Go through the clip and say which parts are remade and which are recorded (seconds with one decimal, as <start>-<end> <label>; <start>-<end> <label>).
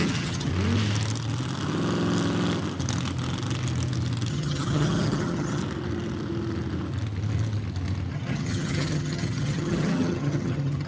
0.0-0.5 remade; 0.5-4.3 recorded; 4.3-5.6 remade; 5.6-8.1 recorded; 8.1-10.9 remade